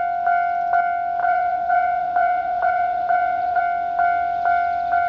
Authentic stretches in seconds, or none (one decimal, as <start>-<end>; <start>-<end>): 0.0-1.2; 3.6-5.1